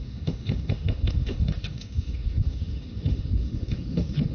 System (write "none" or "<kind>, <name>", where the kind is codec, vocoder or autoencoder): autoencoder, DAC-VAE